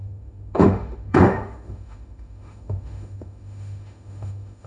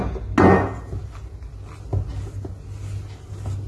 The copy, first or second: first